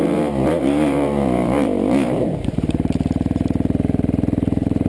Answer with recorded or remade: remade